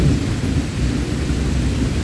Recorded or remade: recorded